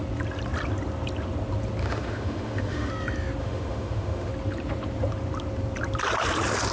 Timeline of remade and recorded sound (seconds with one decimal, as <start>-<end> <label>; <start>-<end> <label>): 0.0-1.8 recorded; 1.8-2.9 remade; 2.9-3.4 recorded; 3.4-4.3 remade; 4.3-6.7 recorded